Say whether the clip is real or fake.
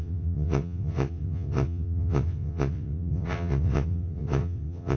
fake